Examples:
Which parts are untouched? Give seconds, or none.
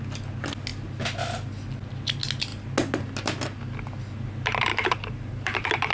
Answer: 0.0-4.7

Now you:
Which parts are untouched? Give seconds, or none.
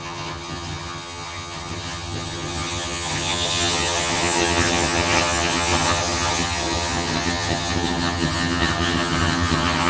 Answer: none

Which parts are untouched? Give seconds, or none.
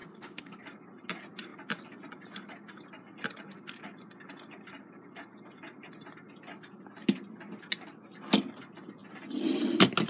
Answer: 0.6-10.1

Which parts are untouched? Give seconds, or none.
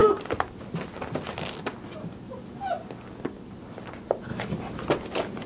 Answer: 0.0-5.5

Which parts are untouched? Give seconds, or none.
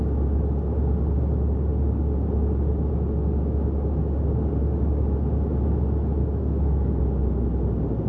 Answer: 0.0-6.4; 7.0-8.1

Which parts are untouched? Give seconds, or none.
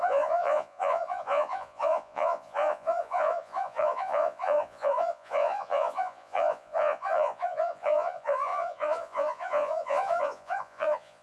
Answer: none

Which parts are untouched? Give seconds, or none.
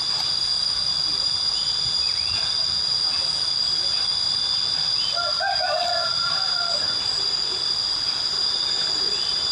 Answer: 0.0-9.5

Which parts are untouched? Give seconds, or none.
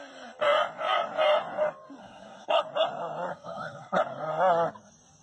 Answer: 0.0-2.0; 2.6-3.3; 4.0-5.2